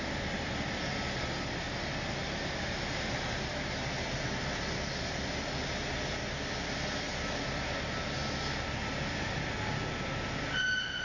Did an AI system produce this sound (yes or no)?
no